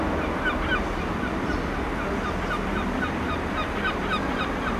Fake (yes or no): no